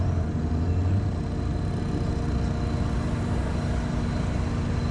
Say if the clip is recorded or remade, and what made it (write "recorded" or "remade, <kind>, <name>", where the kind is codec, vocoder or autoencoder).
recorded